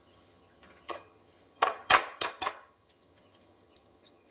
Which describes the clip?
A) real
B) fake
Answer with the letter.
B